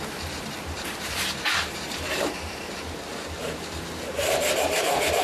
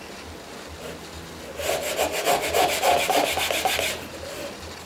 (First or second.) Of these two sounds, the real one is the second